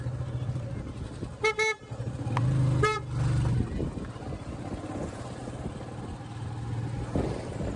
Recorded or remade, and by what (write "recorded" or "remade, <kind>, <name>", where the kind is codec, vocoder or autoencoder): recorded